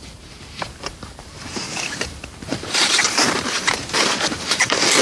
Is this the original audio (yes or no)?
no